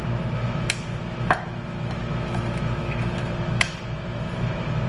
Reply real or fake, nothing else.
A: fake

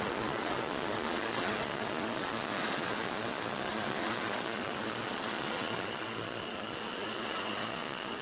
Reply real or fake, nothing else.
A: fake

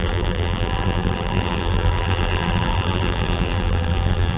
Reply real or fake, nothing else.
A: fake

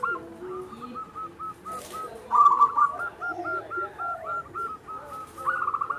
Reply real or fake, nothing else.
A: real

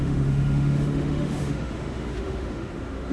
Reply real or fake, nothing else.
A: fake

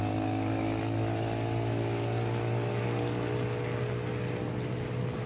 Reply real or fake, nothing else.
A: real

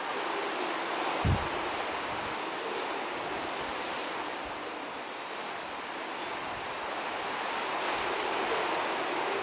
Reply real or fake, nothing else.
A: real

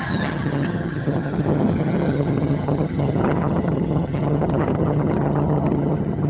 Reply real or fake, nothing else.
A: fake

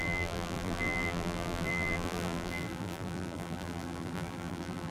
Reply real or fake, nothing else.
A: fake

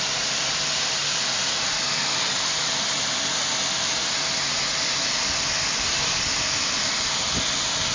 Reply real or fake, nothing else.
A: fake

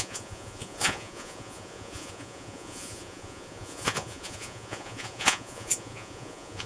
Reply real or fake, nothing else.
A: fake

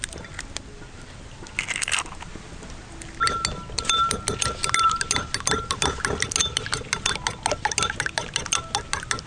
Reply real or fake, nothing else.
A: real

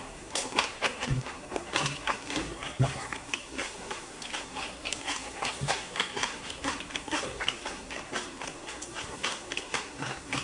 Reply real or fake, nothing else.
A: fake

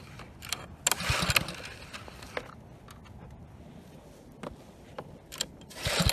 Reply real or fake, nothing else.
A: real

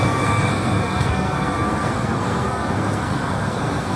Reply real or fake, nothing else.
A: fake